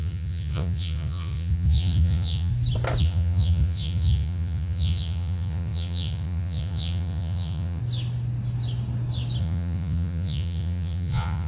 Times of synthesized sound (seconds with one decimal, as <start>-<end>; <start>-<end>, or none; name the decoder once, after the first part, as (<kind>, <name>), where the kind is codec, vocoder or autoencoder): 0.0-2.5 (vocoder, Vocos); 3.0-7.8; 9.4-11.5